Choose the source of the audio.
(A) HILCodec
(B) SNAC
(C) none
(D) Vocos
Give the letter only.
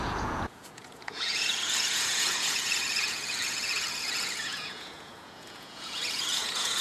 D